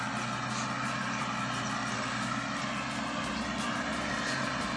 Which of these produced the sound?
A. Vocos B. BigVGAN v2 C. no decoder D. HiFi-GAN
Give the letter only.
C